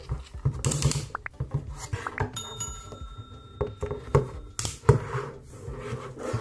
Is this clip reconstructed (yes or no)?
no